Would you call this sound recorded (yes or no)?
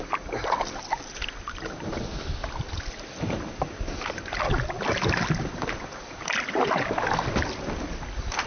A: yes